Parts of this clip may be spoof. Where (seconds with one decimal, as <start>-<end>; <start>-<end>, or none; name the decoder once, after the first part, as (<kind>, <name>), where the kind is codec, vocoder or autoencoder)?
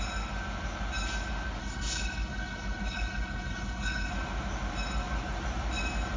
1.6-4.1 (codec, HILCodec)